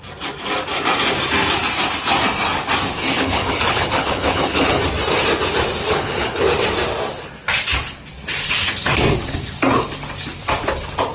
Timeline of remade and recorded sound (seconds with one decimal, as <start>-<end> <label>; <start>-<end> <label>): 0.0-3.0 recorded; 3.0-4.8 remade; 4.8-5.8 recorded; 5.8-6.4 remade; 6.4-11.1 recorded